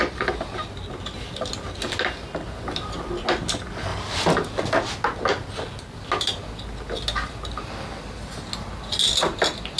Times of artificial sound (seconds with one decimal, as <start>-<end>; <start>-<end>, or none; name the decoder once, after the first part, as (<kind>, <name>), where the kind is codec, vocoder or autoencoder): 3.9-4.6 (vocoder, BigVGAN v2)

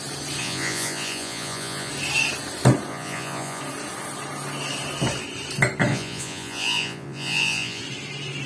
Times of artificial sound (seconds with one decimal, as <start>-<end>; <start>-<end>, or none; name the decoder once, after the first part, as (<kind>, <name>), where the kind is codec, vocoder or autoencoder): 0.4-1.9 (vocoder, Vocos); 2.9-3.6; 5.9-7.8

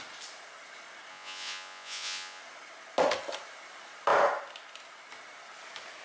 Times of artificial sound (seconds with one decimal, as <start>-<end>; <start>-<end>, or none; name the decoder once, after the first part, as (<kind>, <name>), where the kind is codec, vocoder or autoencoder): 1.1-2.4 (vocoder, Vocos)

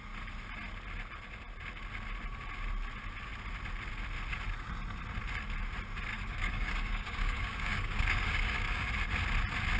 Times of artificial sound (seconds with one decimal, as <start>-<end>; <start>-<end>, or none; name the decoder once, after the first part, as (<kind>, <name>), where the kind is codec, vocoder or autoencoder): 6.1-8.9 (codec, DAC)

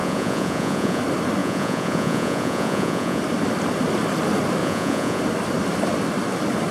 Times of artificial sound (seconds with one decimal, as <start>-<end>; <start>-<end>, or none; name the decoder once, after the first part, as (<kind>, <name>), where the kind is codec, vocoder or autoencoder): 0.0-1.0 (vocoder, Vocos); 1.4-3.2; 4.6-5.2